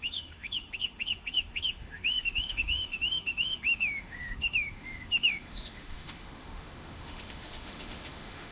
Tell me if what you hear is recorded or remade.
remade